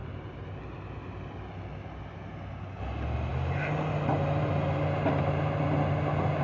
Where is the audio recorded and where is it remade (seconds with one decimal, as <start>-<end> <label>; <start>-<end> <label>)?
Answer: 0.0-0.6 remade; 0.6-6.4 recorded